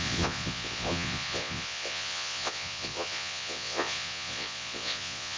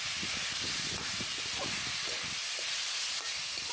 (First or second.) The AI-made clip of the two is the first